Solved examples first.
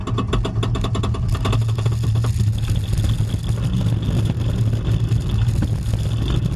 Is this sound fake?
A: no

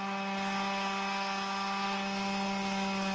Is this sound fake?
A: no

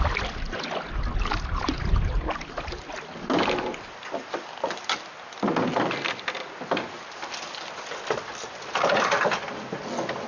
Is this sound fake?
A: no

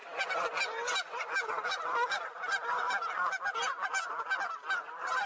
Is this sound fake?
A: no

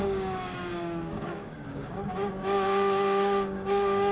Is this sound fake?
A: yes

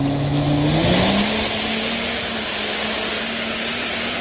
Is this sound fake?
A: no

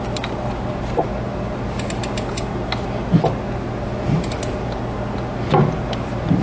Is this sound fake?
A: no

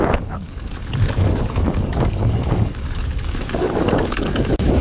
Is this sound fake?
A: yes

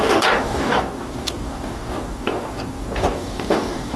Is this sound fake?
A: yes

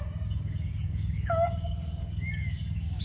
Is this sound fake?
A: yes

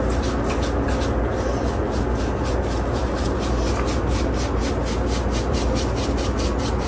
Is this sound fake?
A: no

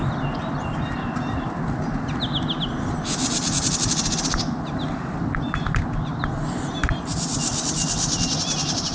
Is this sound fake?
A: no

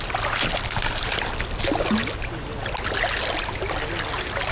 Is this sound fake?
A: no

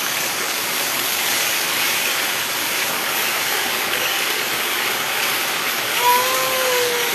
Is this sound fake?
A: yes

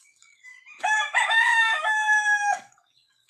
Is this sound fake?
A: yes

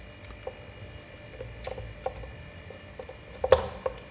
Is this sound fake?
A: no